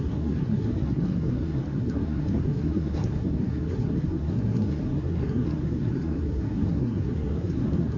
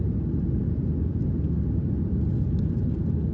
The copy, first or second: first